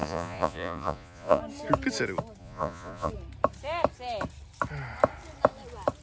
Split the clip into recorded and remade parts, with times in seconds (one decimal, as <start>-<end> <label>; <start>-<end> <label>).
0.0-1.4 remade; 1.4-2.4 recorded; 2.4-3.1 remade; 3.1-6.0 recorded

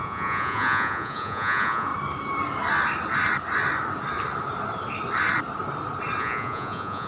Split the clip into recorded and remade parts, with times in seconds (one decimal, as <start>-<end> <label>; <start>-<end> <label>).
0.0-1.9 remade; 1.9-6.2 recorded; 6.2-7.1 remade

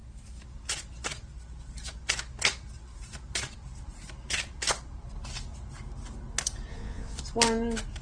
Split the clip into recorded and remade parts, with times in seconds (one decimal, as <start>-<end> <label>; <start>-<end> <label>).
0.0-6.7 recorded; 6.7-7.2 remade; 7.2-8.0 recorded

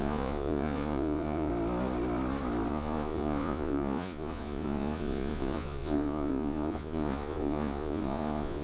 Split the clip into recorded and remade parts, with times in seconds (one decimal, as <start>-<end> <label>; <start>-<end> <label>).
0.0-1.5 remade; 1.5-2.7 recorded; 2.7-8.6 remade

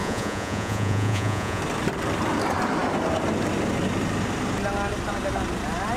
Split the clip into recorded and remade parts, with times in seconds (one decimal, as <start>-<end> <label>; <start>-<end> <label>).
0.0-1.6 remade; 1.6-6.0 recorded

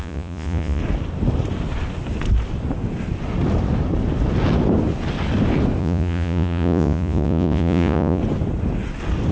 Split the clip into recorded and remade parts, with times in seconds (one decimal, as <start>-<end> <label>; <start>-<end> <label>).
0.0-0.8 remade; 0.8-5.8 recorded; 5.8-8.2 remade; 8.2-9.3 recorded